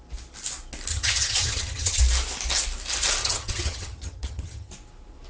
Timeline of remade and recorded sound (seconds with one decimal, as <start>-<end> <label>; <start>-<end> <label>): 0.0-0.9 recorded; 0.9-2.0 remade; 2.0-3.2 recorded; 3.2-4.7 remade; 4.7-5.3 recorded